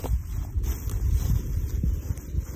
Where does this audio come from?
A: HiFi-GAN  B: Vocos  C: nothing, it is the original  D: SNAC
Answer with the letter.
C